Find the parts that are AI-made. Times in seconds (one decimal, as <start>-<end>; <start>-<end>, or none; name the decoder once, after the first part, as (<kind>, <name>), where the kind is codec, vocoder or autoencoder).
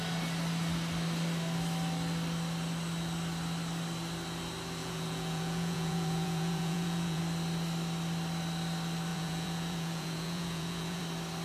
4.8-7.2 (vocoder, Vocos); 9.1-11.0